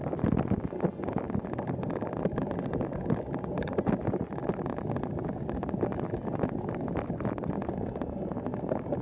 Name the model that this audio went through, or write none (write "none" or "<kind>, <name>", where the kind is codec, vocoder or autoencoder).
none